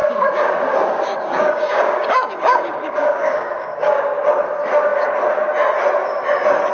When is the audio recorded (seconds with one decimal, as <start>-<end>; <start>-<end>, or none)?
4.0-6.7